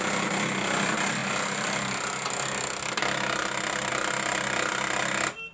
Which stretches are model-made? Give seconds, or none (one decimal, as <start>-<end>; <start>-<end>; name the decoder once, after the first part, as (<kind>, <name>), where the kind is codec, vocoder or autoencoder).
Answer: none